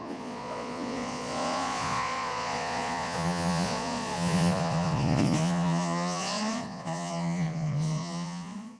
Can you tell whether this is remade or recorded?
remade